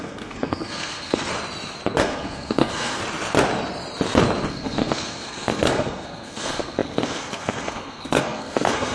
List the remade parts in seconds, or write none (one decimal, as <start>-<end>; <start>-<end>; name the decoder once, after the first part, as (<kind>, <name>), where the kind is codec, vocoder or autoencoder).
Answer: 0.0-1.3 (codec, SNAC); 2.0-3.0; 4.5-8.9